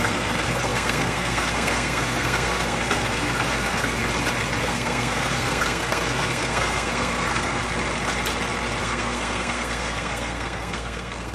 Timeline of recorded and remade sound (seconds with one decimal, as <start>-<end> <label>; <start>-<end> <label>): 0.0-4.0 remade; 4.0-4.6 recorded; 4.6-7.6 remade; 7.6-8.8 recorded; 8.8-11.3 remade